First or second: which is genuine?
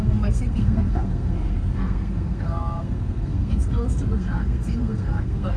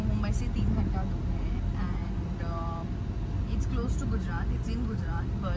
second